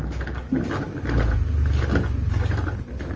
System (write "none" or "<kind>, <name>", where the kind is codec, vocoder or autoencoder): none